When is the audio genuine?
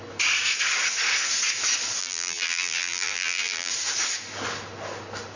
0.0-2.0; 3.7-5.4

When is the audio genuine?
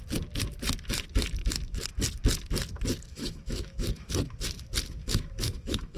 0.0-1.4; 1.9-3.1; 4.1-5.0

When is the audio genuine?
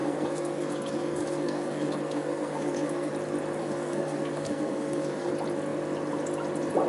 3.1-3.6; 5.3-6.9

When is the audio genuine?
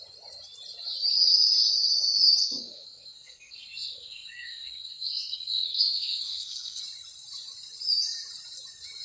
0.0-2.4; 6.8-9.0